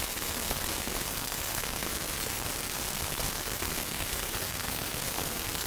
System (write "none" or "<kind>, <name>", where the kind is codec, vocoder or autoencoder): codec, SNAC